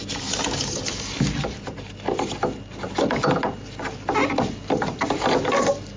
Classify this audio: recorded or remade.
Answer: recorded